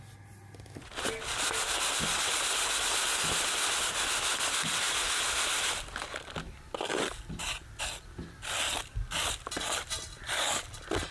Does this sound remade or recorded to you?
recorded